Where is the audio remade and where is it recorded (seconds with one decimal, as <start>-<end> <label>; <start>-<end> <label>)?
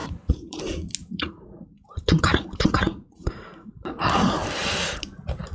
0.0-0.6 remade; 0.6-1.0 recorded; 1.0-4.3 remade; 4.3-5.5 recorded